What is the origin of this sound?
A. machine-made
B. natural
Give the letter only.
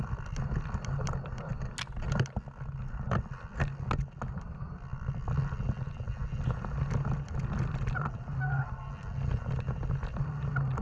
B